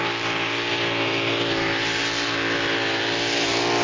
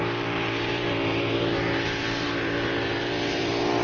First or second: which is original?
first